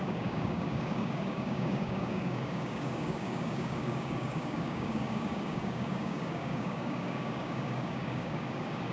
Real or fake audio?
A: fake